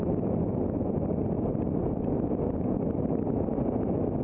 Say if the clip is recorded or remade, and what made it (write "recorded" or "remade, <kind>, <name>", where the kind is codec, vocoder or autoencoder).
recorded